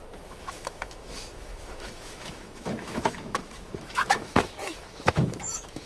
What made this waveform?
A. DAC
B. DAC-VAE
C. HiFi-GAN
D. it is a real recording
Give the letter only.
B